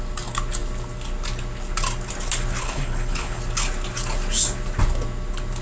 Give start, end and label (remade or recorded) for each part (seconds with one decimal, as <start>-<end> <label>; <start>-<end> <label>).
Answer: 0.0-2.6 recorded; 2.6-3.4 remade; 3.4-5.6 recorded